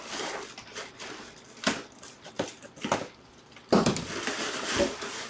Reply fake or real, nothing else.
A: real